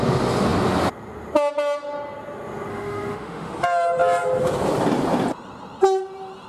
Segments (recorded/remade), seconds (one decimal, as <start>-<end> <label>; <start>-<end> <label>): 0.0-2.7 recorded; 2.7-3.5 remade; 3.5-6.5 recorded